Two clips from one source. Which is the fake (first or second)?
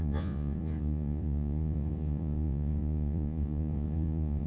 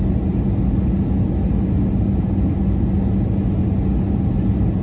first